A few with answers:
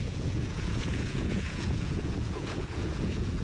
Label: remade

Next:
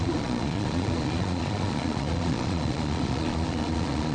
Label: remade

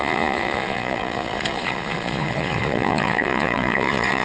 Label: remade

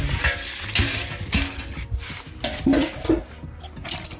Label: recorded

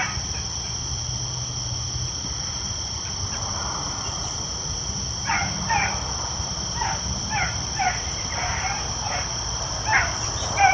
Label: recorded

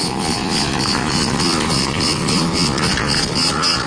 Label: remade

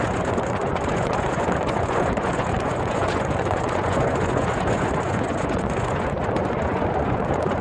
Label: remade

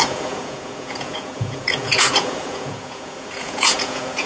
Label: remade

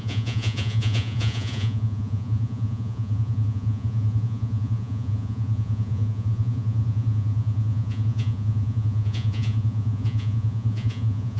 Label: remade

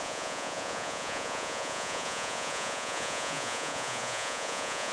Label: remade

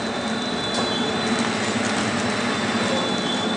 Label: recorded